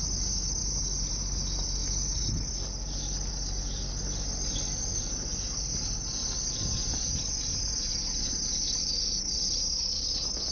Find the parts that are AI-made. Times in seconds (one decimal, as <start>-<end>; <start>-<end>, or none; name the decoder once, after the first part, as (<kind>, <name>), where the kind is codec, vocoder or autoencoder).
none